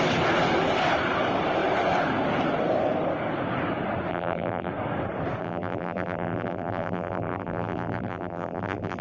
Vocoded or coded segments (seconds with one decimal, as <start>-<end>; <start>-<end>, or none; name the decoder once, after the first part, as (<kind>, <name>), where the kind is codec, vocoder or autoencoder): 4.1-4.7 (vocoder, BigVGAN v2); 5.4-9.0